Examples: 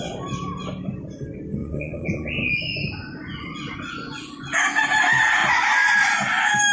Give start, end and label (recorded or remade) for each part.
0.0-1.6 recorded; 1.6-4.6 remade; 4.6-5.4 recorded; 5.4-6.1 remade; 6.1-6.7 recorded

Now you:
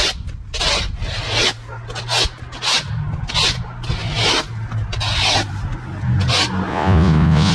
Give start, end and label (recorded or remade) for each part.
0.0-6.7 recorded; 6.7-7.5 remade

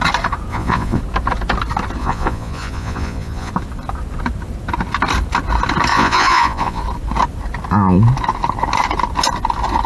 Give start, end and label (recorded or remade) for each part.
0.0-0.5 recorded; 0.5-1.0 remade; 1.0-2.0 recorded; 2.0-3.5 remade; 3.5-5.9 recorded; 5.9-6.8 remade; 6.8-9.9 recorded